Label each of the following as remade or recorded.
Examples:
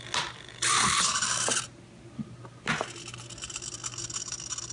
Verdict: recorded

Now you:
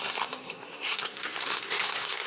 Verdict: remade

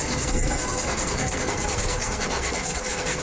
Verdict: remade